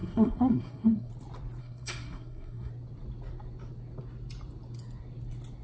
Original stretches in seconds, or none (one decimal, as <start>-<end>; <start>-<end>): 1.1-1.6; 2.7-5.6